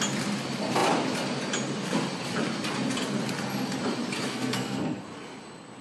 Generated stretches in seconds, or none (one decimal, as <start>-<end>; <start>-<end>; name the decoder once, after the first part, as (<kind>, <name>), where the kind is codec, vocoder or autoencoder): 4.3-5.0 (codec, SNAC)

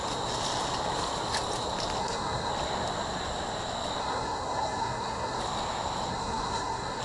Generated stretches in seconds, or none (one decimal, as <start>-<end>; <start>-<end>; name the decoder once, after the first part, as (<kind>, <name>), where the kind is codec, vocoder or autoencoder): 2.0-2.5 (codec, SNAC); 4.0-5.4; 6.1-7.0

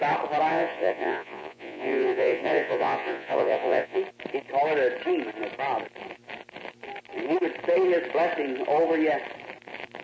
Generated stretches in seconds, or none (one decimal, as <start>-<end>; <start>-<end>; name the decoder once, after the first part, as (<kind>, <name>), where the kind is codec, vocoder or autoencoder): 0.5-4.0 (vocoder, Vocos)

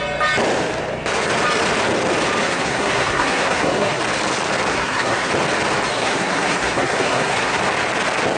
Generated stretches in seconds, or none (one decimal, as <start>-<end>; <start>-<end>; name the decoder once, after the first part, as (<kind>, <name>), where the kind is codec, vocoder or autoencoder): 2.4-4.0 (codec, SNAC); 4.7-5.3; 5.9-7.6

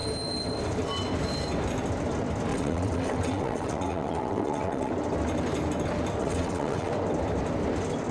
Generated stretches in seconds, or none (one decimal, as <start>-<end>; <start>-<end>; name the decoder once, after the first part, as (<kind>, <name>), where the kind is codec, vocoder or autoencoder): 2.5-4.9 (vocoder, WaveNeXt); 6.2-6.9

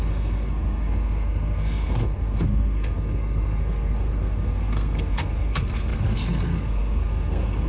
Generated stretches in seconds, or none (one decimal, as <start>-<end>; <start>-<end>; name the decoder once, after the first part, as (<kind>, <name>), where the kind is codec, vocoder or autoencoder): 0.0-7.7 (codec, SNAC)

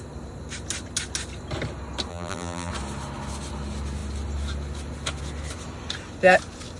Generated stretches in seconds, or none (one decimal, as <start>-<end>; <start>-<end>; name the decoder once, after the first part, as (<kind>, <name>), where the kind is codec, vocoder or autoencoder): 2.1-2.7 (vocoder, BigVGAN v2)

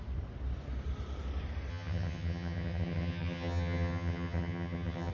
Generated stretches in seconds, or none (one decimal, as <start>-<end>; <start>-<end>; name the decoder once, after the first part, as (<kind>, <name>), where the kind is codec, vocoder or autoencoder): 1.7-5.1 (vocoder, HiFi-GAN)